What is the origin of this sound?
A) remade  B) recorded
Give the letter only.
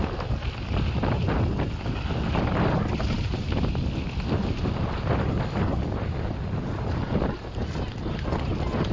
B